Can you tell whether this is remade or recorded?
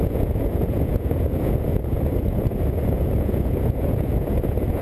remade